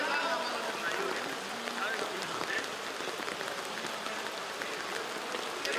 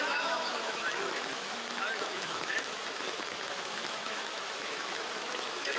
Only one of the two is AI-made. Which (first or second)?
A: second